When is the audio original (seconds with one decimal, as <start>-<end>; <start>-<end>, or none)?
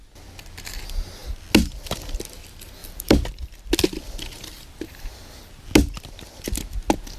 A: 0.0-2.8; 5.2-7.2